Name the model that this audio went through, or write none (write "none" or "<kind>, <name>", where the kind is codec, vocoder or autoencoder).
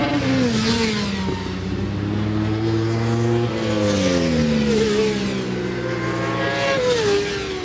none